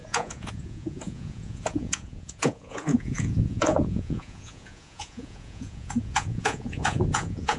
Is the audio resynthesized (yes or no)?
yes